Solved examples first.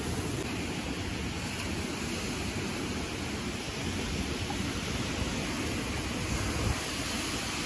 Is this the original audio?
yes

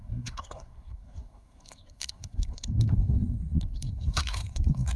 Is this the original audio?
no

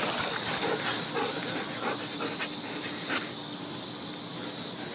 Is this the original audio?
yes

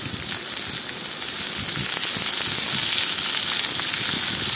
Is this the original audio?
yes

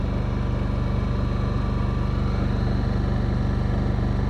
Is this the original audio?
yes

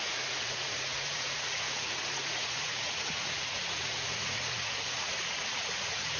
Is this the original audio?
no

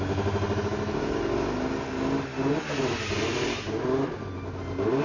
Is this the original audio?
yes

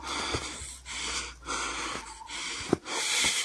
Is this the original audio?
yes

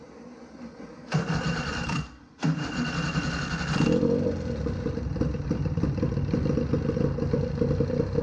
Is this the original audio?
yes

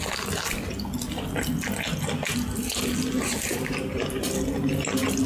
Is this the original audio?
yes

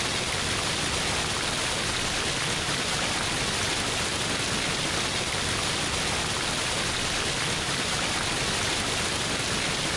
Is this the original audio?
yes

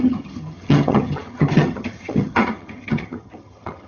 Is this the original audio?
no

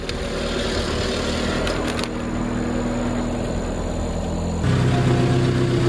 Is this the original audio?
yes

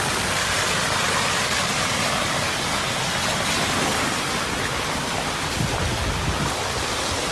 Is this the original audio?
yes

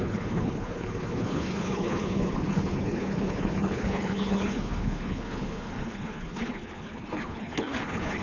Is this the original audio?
no